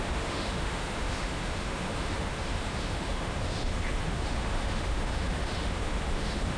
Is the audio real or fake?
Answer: fake